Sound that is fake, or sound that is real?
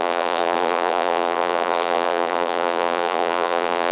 fake